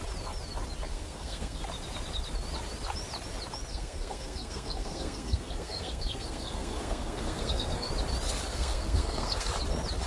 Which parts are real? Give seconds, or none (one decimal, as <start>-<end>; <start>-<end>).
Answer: 0.0-0.9; 1.6-3.7; 7.9-8.5; 9.5-10.1